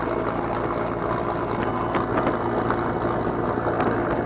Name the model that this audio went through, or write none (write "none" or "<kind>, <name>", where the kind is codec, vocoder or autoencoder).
none